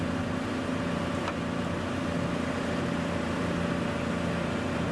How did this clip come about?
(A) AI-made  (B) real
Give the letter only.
B